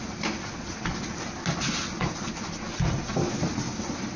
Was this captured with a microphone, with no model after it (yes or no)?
yes